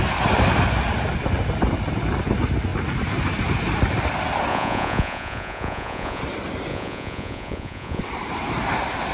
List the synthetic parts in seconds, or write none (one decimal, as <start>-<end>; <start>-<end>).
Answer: 4.5-6.2; 6.7-8.0